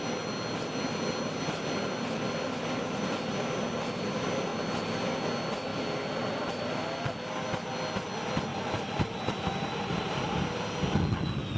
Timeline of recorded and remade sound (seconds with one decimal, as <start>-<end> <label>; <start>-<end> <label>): 0.0-8.5 recorded; 8.5-10.7 remade; 10.7-11.6 recorded

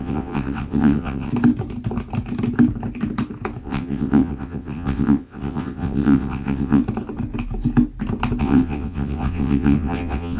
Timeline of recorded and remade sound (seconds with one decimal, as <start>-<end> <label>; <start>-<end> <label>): 0.0-1.3 remade; 1.3-3.6 recorded; 3.6-6.8 remade; 6.8-8.4 recorded; 8.4-10.4 remade

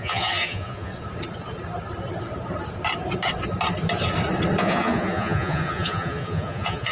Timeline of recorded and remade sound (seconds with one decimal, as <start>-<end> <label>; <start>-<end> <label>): 0.0-0.9 remade; 0.9-4.6 recorded; 4.6-6.9 remade